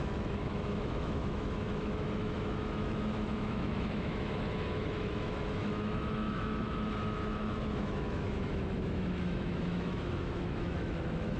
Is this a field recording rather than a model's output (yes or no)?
no